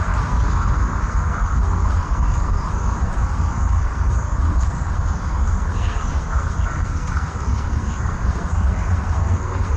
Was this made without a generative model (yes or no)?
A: no